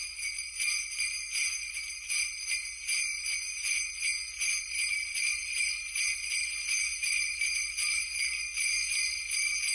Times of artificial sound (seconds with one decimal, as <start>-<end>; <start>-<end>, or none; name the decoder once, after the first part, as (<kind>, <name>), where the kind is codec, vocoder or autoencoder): 0.0-3.1 (vocoder, BigVGAN v2); 4.6-9.7